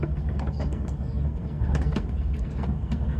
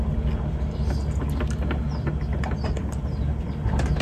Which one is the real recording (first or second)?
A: second